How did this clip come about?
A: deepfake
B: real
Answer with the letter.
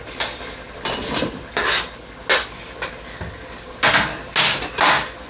B